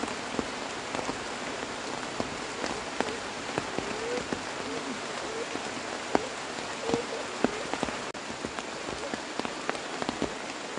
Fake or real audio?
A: real